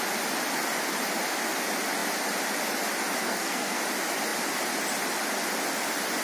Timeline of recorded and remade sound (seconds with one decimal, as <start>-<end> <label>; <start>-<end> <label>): 0.0-3.2 recorded; 3.2-3.8 remade; 3.8-6.2 recorded